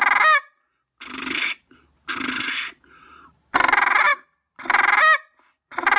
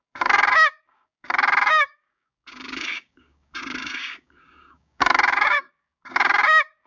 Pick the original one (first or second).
first